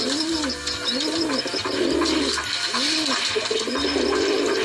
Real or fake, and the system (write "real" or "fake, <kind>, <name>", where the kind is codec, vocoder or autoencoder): real